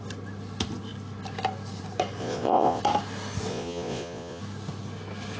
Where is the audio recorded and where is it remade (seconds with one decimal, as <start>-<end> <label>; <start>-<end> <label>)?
0.0-2.2 recorded; 2.2-2.8 remade; 2.8-3.5 recorded; 3.5-4.4 remade; 4.4-5.4 recorded